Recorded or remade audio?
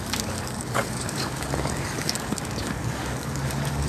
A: remade